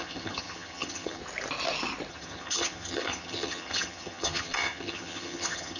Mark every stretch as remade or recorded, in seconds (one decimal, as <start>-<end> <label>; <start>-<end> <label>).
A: 0.0-1.2 remade; 1.2-2.1 recorded; 2.1-5.8 remade